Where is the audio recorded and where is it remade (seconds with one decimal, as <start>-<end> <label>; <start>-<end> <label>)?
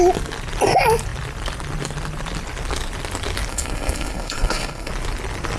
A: 0.0-3.5 recorded; 3.5-4.9 remade; 4.9-5.6 recorded